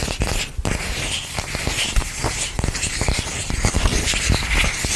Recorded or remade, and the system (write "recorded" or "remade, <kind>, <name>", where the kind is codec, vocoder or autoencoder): recorded